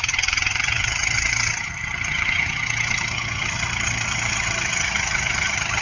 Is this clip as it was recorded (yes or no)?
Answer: no